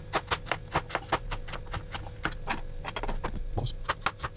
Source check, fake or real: real